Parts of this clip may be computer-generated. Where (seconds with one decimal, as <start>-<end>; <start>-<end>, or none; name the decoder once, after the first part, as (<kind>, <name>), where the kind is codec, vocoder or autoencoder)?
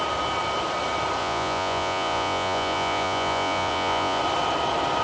1.2-4.2 (vocoder, Vocos)